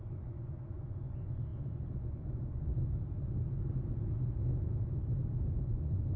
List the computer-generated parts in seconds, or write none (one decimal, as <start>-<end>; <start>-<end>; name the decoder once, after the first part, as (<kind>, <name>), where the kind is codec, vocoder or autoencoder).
0.0-2.7 (vocoder, Vocos); 5.7-6.2